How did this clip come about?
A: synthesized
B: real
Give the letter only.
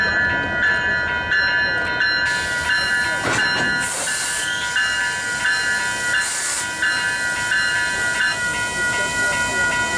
B